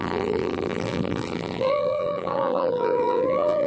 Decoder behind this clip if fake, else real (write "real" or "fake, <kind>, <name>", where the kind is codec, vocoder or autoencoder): fake, vocoder, BigVGAN v2